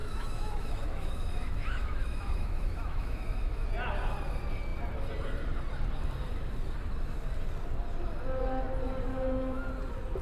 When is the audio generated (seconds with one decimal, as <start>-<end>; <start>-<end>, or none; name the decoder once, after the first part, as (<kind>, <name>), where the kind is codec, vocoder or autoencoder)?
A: 0.0-3.7 (autoencoder, DAC-VAE); 9.1-9.7